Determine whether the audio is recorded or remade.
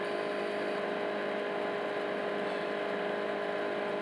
recorded